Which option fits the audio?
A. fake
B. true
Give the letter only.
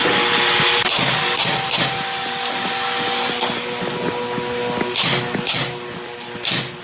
B